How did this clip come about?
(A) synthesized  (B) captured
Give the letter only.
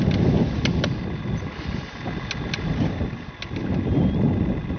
B